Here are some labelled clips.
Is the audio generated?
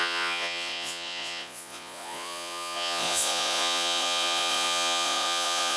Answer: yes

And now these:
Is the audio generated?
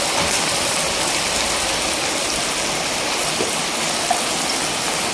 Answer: no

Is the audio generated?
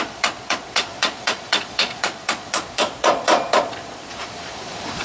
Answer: yes